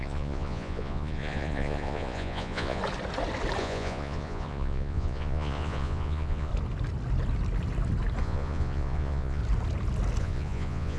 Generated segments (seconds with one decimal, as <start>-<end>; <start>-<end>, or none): 0.0-2.8; 3.6-6.5; 8.2-9.4; 10.2-11.0